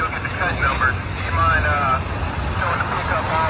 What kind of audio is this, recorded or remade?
recorded